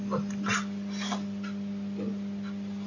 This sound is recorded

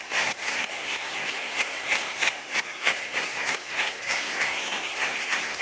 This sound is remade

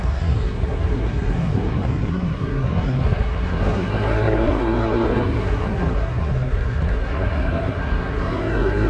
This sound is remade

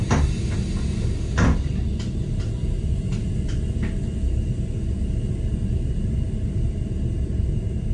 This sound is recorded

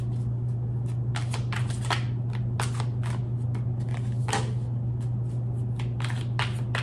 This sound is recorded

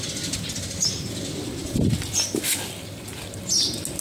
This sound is recorded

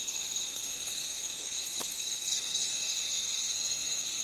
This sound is remade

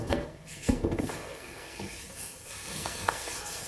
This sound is remade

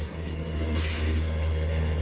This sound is remade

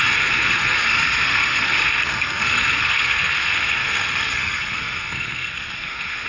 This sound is remade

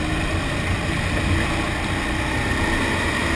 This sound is recorded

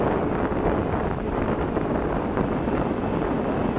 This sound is recorded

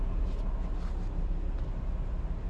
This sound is recorded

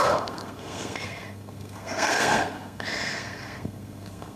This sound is remade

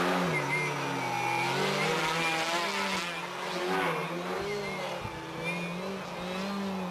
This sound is recorded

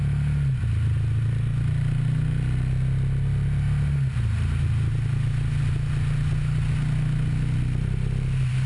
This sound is recorded